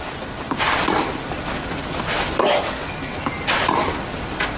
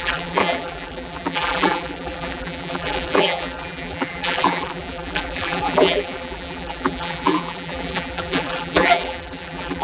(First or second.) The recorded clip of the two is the first